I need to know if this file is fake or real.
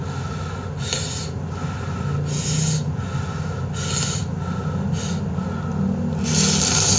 real